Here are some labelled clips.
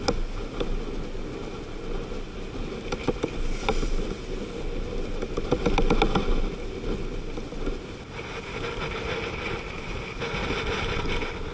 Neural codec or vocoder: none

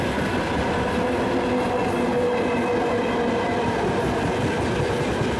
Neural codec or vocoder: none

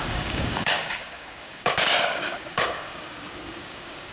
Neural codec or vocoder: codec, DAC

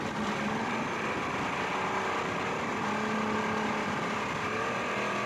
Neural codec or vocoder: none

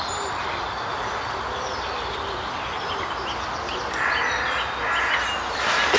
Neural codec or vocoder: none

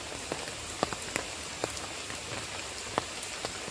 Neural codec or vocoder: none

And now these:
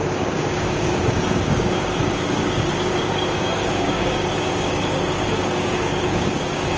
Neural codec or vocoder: codec, DAC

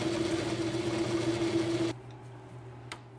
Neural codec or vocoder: none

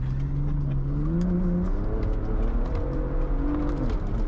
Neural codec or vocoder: none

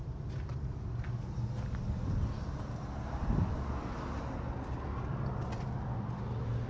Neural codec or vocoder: none